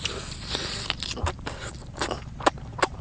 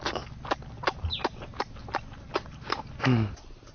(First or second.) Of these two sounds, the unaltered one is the second